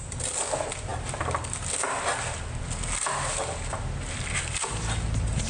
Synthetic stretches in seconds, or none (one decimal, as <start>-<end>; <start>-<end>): none